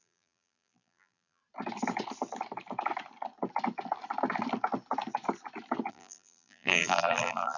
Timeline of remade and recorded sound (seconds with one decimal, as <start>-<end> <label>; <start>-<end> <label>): 0.0-1.4 remade; 1.4-5.9 recorded; 5.9-7.6 remade